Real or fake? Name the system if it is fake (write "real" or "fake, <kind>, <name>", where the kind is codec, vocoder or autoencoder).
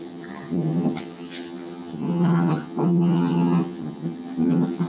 fake, vocoder, HiFi-GAN